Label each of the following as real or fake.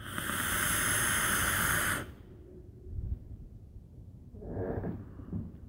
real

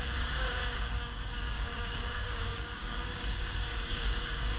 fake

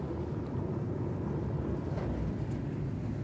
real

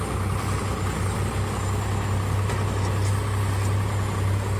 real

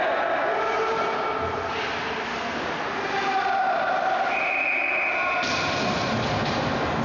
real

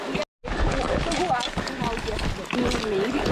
real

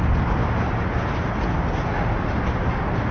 real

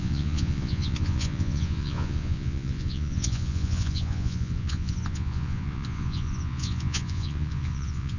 fake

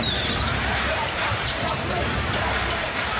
fake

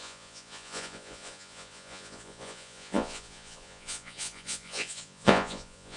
fake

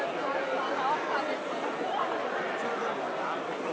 real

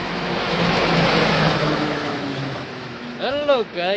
fake